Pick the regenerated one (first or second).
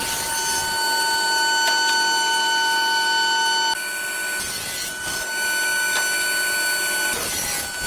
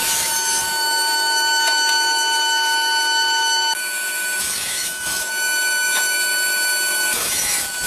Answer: second